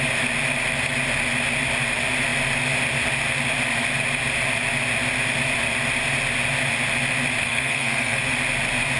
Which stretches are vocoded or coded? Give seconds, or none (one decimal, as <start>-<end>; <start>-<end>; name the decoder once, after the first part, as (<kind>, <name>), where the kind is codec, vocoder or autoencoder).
7.4-8.2 (codec, SNAC)